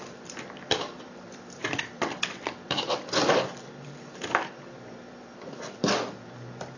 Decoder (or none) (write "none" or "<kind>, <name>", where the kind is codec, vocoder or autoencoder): vocoder, BigVGAN v2